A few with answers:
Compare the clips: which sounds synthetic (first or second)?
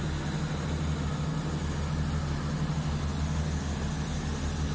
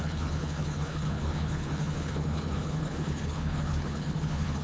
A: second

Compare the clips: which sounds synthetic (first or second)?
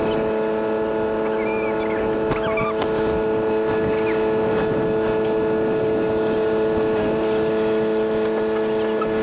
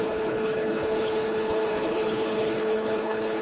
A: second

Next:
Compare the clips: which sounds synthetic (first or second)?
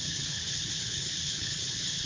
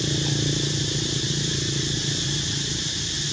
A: first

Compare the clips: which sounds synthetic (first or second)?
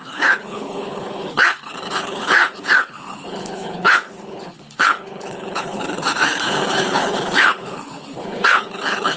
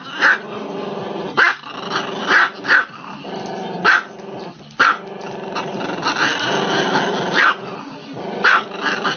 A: first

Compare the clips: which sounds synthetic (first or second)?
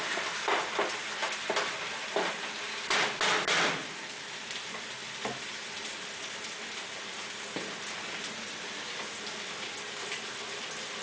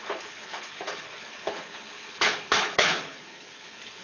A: second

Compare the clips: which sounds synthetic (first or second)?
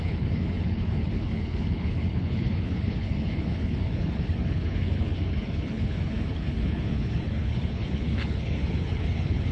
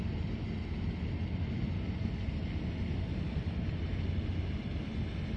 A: first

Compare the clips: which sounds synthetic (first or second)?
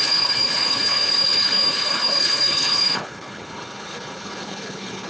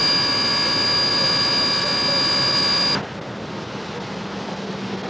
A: first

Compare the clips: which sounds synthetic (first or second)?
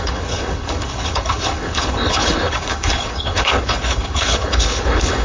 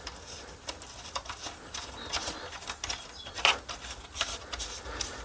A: first